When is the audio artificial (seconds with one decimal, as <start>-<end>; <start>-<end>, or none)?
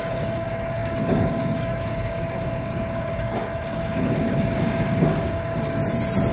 0.0-5.8